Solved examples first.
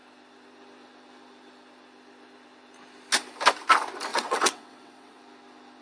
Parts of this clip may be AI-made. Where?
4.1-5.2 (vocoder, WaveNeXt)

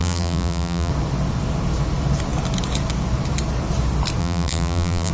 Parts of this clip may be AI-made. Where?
0.0-0.9 (vocoder, BigVGAN v2); 4.2-5.1

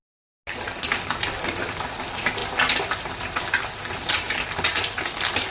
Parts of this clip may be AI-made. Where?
none

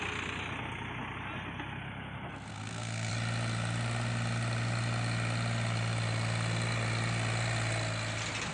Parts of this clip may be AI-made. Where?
2.5-3.1 (codec, SNAC)

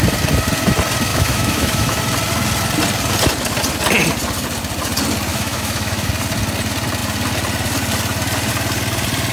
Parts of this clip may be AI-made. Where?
1.1-2.0 (autoencoder, DAC-VAE); 5.3-6.1

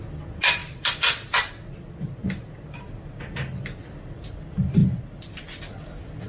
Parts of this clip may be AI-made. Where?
none

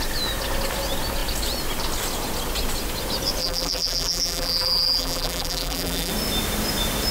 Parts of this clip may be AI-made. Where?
3.4-6.1 (vocoder, BigVGAN v2)